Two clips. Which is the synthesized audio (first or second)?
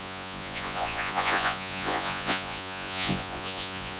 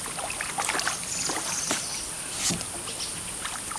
first